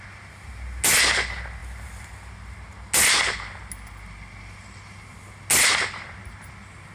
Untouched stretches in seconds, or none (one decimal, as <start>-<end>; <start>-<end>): 0.0-6.9

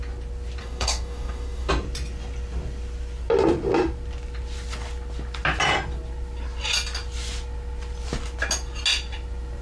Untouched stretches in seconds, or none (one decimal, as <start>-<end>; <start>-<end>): 0.0-0.6; 1.7-9.6

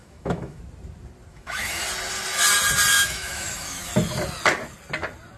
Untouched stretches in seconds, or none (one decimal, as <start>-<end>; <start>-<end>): 0.6-1.3; 1.8-2.9; 3.9-5.4

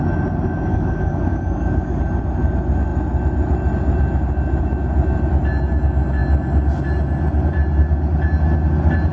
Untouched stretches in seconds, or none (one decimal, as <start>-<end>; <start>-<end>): 0.0-0.7; 2.0-9.1

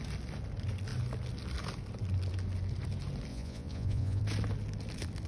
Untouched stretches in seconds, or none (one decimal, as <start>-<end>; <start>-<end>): 0.0-3.3; 4.2-5.3

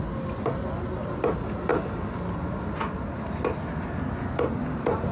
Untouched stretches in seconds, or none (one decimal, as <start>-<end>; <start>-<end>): 0.0-5.1

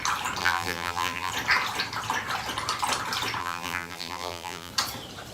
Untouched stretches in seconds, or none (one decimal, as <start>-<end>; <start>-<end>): 0.0-0.4; 1.3-3.4; 4.7-5.3